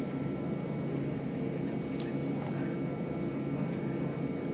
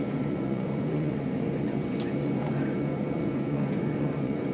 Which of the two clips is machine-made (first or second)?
second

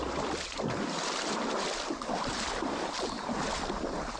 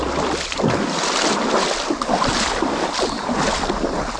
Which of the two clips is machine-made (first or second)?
first